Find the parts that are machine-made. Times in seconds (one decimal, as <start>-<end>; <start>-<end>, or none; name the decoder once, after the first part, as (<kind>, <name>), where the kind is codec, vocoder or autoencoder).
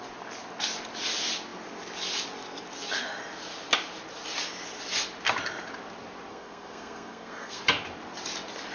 6.3-7.6 (codec, SNAC)